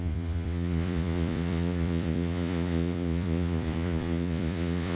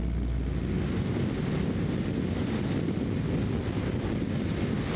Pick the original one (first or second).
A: second